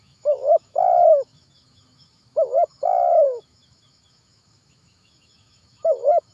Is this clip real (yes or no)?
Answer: no